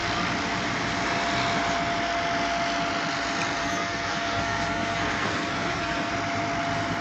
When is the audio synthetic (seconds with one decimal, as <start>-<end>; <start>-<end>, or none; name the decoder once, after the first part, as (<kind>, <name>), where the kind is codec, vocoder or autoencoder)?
3.6-6.1 (codec, SNAC)